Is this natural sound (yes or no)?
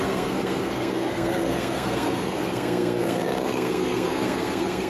no